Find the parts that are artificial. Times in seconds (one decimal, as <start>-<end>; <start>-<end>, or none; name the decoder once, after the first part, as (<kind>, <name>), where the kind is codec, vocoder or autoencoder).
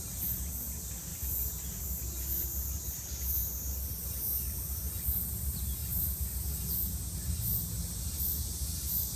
1.1-1.8 (vocoder, BigVGAN v2)